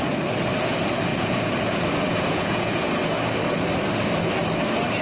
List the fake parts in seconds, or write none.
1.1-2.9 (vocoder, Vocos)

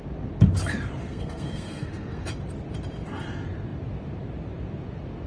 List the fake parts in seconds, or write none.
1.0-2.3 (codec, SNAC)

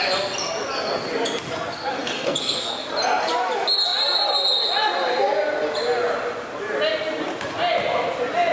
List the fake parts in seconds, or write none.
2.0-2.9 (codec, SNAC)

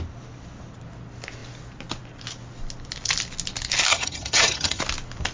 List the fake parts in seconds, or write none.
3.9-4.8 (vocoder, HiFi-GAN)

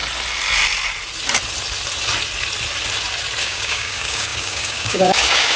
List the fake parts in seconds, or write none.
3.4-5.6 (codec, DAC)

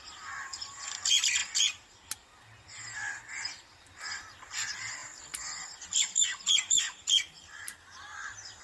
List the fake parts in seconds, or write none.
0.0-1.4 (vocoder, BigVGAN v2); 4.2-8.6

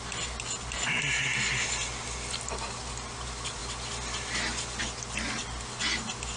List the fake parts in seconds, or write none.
none